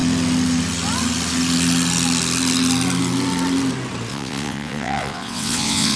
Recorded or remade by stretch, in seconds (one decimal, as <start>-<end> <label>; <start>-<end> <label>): 0.0-4.1 recorded; 4.1-6.0 remade